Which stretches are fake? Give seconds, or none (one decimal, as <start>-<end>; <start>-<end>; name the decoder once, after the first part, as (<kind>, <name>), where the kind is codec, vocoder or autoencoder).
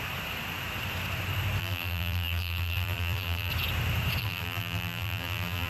1.6-3.5 (vocoder, BigVGAN v2); 4.2-5.7